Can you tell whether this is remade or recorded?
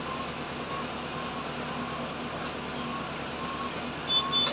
recorded